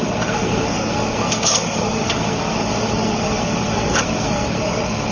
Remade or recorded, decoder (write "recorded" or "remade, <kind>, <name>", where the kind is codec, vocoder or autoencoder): remade, codec, SNAC